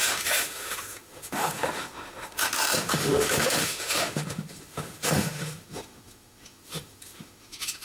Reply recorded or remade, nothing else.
remade